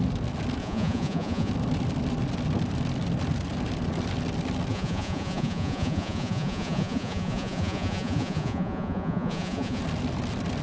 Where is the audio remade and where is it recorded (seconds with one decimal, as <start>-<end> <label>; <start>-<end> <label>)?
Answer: 0.0-0.6 recorded; 0.6-1.5 remade; 1.5-4.7 recorded; 4.7-9.8 remade; 9.8-10.6 recorded